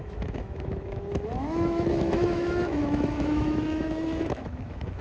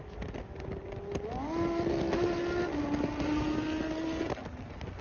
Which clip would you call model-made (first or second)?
first